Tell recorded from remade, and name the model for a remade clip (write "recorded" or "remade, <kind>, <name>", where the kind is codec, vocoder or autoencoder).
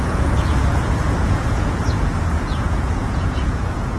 remade, vocoder, Vocos